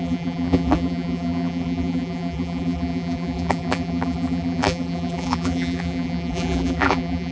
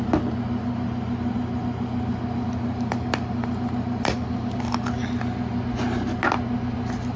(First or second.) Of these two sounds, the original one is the second